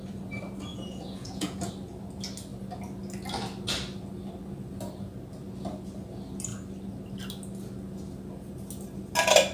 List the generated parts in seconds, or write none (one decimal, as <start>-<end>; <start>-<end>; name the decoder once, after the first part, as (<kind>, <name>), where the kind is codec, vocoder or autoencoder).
0.7-1.6 (vocoder, Vocos)